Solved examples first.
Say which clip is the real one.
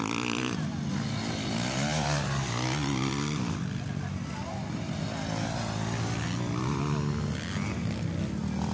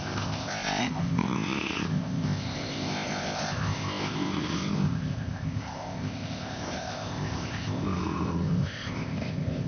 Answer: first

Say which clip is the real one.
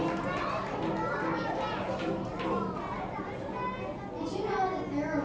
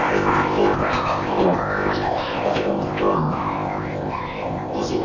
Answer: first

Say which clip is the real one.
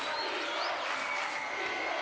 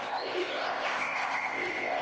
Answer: first